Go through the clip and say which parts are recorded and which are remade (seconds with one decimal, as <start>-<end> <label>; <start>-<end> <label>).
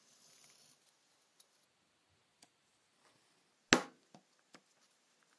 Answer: 0.0-5.4 recorded